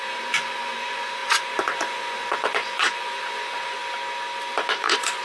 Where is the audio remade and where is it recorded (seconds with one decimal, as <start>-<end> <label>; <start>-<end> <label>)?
0.0-3.8 remade; 3.8-4.8 recorded; 4.8-5.2 remade